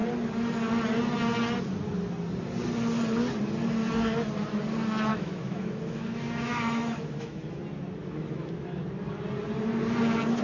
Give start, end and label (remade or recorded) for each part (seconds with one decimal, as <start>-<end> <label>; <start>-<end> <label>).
0.0-5.1 recorded; 5.1-7.6 remade; 7.6-8.0 recorded; 8.0-8.8 remade; 8.8-10.4 recorded